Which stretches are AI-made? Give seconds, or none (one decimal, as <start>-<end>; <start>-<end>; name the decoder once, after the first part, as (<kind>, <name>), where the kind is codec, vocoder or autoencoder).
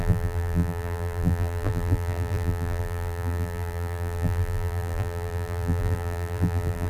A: 0.0-6.9 (vocoder, BigVGAN v2)